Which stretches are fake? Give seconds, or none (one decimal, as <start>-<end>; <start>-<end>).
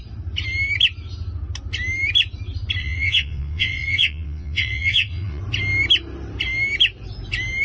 2.8-5.4